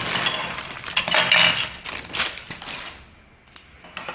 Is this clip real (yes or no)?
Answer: yes